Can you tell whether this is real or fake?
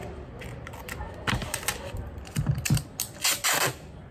real